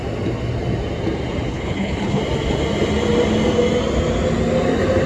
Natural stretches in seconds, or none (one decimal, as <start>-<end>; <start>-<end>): 0.0-1.5; 2.2-5.1